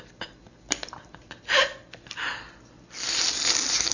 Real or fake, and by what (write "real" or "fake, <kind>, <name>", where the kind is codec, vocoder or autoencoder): real